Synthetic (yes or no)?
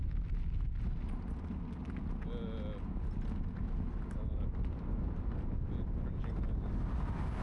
no